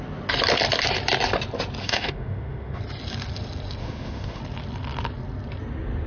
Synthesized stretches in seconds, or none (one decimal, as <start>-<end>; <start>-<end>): 1.8-2.8; 3.8-4.4

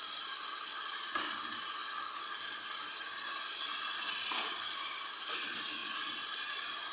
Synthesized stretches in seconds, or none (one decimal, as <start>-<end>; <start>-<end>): 0.0-1.8; 3.2-5.8

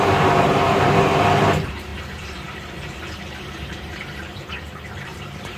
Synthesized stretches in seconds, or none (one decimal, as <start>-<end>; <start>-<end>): 0.0-5.6

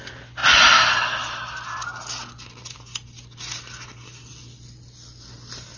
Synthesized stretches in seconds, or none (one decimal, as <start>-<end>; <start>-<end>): none

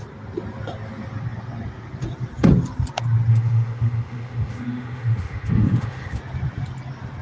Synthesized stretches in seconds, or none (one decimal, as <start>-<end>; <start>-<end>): 3.3-6.2

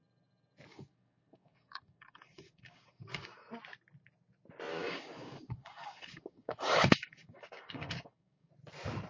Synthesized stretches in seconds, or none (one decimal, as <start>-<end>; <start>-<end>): 0.7-3.5; 4.7-8.5

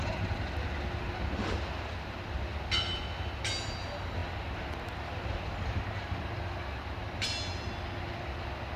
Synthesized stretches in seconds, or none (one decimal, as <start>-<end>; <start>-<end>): none